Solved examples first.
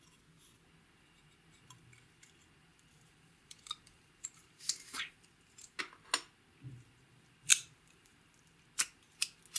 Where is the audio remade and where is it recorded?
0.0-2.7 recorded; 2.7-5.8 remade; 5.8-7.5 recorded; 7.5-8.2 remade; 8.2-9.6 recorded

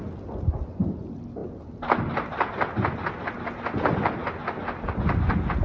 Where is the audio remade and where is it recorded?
0.0-5.6 recorded

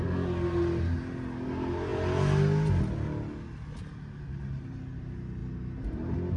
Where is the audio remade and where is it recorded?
0.0-6.4 recorded

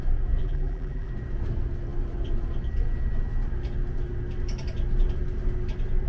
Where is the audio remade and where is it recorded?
0.0-0.4 recorded; 0.4-1.1 remade; 1.1-6.1 recorded

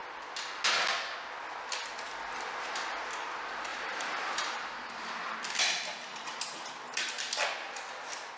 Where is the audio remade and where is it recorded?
0.0-3.7 recorded; 3.7-5.1 remade; 5.1-6.1 recorded; 6.1-7.1 remade; 7.1-8.4 recorded

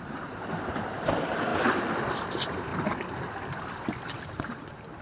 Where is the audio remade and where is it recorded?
0.0-2.7 remade; 2.7-3.7 recorded; 3.7-5.0 remade